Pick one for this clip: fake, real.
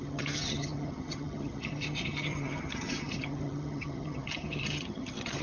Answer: fake